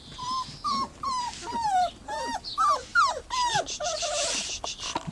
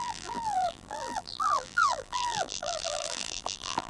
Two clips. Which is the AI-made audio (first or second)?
second